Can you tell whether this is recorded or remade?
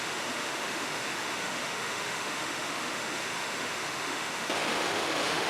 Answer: remade